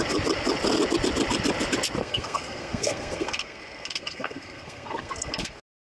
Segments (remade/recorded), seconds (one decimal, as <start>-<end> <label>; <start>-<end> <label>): 0.0-2.0 recorded; 2.0-5.6 remade; 5.6-6.0 recorded